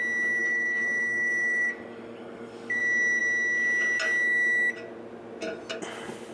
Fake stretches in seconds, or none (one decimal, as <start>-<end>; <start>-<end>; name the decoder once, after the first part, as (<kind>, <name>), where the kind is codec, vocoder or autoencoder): 0.4-2.8 (codec, DAC)

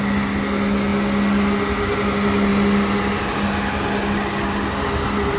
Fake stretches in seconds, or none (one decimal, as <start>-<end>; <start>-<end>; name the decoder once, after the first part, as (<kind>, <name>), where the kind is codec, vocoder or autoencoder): none

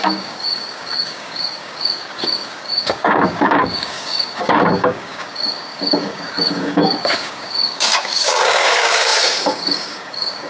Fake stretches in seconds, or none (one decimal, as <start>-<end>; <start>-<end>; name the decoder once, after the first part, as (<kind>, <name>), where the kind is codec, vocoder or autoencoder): 0.0-10.5 (codec, DAC)

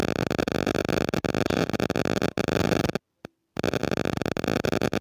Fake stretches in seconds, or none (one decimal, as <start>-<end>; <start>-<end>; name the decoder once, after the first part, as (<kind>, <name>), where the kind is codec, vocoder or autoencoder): none

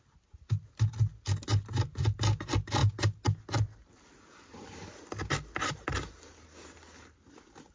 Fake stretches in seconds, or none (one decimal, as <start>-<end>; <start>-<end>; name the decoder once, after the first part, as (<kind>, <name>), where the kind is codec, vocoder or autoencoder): none

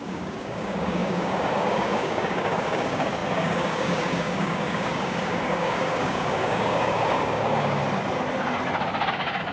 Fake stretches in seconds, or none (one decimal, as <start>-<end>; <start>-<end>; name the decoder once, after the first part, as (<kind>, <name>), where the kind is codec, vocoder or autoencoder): 0.0-7.8 (codec, DAC); 9.1-9.5

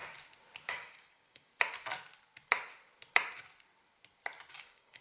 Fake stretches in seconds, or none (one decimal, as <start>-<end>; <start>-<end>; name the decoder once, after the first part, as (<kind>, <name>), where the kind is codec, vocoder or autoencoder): 0.7-1.5 (codec, DAC); 4.5-5.0